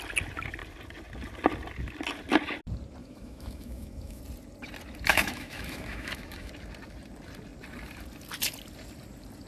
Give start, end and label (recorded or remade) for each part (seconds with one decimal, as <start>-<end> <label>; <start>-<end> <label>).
0.0-3.0 recorded; 3.0-4.2 remade; 4.2-5.1 recorded; 5.1-6.5 remade; 6.5-9.5 recorded